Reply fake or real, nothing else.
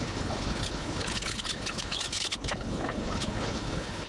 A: fake